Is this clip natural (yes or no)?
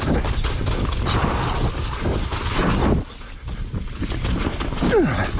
yes